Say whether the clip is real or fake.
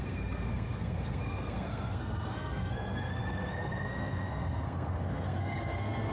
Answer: fake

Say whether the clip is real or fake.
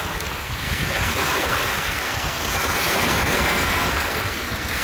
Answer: fake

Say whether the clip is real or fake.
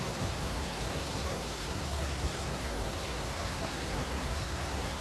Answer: fake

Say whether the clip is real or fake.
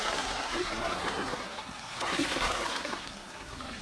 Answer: fake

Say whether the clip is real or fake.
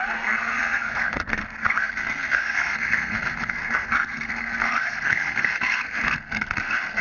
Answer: fake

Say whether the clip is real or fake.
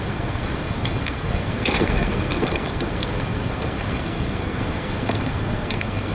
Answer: fake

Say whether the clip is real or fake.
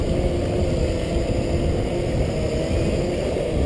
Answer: real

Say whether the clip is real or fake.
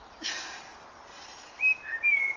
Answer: real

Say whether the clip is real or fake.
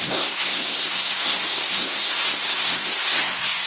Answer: fake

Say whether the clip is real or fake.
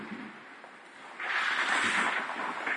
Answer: real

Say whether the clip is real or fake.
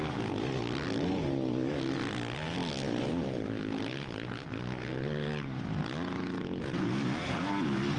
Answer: real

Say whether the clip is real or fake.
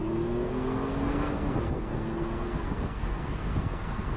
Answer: fake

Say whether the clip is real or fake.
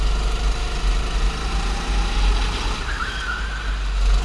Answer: real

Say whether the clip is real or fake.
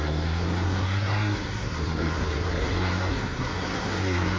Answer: fake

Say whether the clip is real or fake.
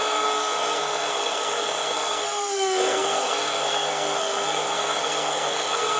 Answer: fake